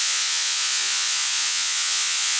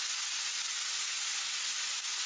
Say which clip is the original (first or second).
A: second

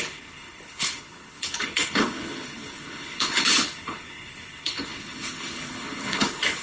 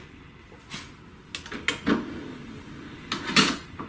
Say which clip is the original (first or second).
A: second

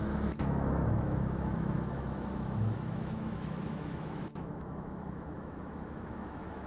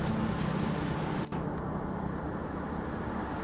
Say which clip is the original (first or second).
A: second